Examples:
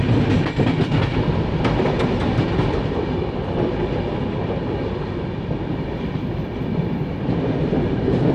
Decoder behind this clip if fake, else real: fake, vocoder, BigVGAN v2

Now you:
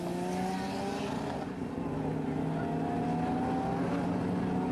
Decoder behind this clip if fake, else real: real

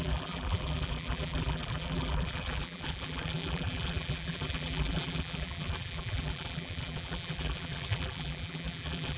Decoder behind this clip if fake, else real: fake, vocoder, BigVGAN v2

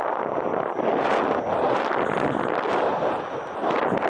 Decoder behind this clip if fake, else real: real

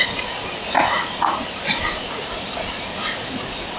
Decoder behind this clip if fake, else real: real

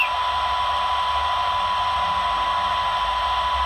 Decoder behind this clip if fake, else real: real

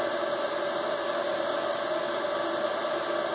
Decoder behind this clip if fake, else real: real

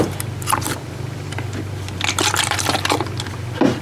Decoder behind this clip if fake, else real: real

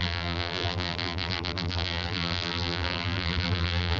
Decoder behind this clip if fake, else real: fake, vocoder, BigVGAN v2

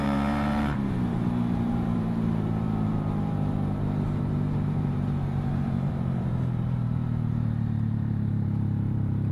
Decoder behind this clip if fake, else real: fake, vocoder, BigVGAN v2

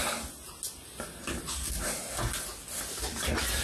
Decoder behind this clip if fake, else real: real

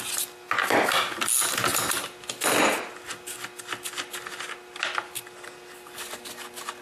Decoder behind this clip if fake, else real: real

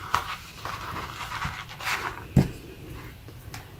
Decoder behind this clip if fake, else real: real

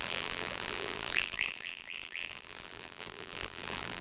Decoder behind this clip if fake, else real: fake, vocoder, BigVGAN v2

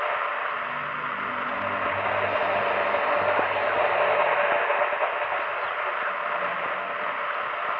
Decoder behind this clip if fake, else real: real